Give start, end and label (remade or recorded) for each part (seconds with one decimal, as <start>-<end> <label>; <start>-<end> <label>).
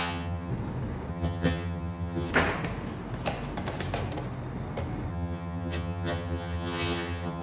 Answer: 0.0-0.5 remade; 0.5-1.1 recorded; 1.1-2.3 remade; 2.3-5.1 recorded; 5.1-7.4 remade